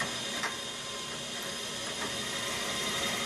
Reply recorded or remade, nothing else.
recorded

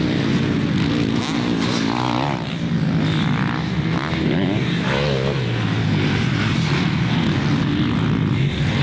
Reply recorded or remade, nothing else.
recorded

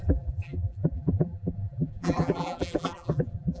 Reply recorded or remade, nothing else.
remade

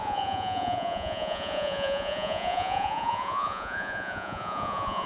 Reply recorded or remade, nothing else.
remade